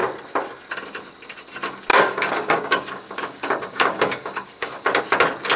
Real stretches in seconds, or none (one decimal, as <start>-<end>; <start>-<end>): 0.0-1.9; 5.0-5.6